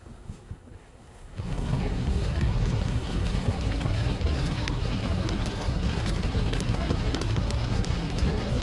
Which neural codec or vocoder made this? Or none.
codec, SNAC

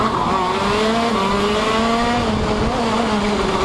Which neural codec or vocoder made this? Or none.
none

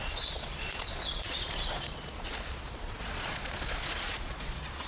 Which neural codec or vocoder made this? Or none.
vocoder, Vocos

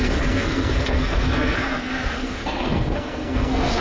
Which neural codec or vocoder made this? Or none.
codec, SNAC